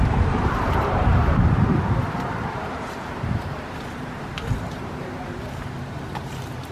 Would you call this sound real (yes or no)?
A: no